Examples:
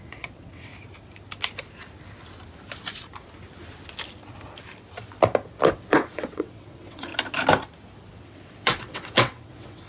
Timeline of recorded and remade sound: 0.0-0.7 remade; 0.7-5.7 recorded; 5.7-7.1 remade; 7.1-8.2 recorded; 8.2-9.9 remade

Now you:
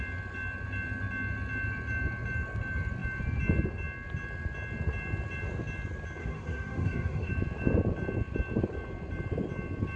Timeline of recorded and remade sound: 0.0-6.2 recorded; 6.2-7.3 remade; 7.3-10.0 recorded

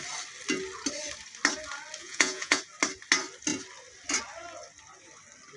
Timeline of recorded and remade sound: 0.0-2.0 recorded; 2.0-2.6 remade; 2.6-5.6 recorded

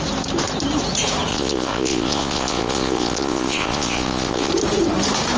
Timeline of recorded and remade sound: 0.0-1.3 recorded; 1.3-4.5 remade; 4.5-5.4 recorded

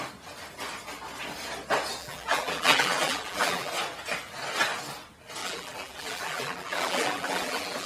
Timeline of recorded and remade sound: 0.0-2.0 recorded; 2.0-3.7 remade; 3.7-5.4 recorded; 5.4-7.9 remade